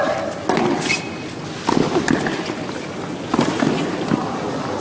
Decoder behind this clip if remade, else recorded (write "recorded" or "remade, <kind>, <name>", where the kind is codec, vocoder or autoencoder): recorded